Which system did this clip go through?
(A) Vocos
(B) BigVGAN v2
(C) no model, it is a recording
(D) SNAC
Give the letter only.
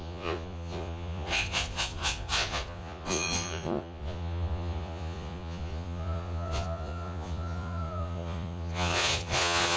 A